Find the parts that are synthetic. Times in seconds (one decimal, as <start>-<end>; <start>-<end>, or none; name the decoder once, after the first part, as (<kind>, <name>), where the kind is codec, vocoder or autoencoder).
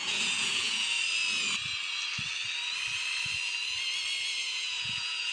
0.0-1.0 (vocoder, Vocos); 4.4-5.3